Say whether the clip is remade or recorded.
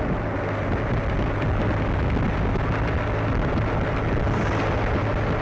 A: recorded